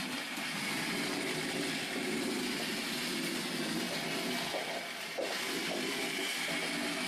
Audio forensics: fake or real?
real